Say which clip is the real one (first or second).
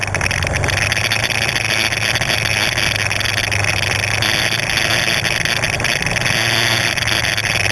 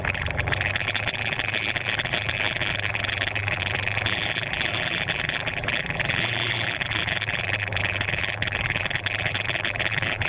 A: first